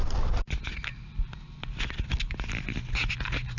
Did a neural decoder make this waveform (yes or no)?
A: no